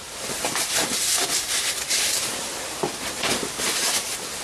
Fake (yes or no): no